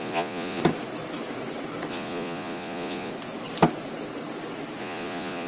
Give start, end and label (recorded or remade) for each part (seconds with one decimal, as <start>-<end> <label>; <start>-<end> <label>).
0.0-0.6 remade; 0.6-1.9 recorded; 1.9-3.1 remade; 3.1-4.8 recorded; 4.8-5.5 remade